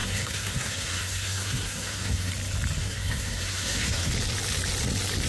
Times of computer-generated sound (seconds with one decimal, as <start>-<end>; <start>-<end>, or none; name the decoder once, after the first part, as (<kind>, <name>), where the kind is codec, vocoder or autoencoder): 0.0-2.3 (codec, SNAC); 2.8-4.1